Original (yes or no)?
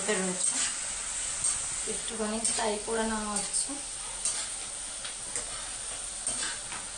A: yes